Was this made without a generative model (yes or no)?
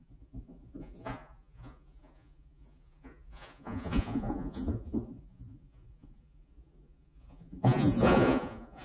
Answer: no